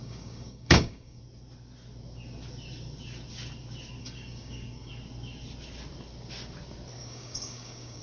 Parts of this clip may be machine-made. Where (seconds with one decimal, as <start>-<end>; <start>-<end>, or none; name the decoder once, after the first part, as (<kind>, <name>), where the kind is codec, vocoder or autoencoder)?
0.0-1.2 (codec, DAC); 4.0-4.9; 7.0-8.0